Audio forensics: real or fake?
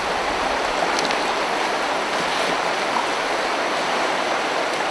real